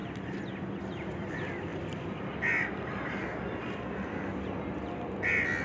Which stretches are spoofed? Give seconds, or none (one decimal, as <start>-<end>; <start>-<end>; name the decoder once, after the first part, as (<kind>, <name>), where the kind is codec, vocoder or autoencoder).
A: none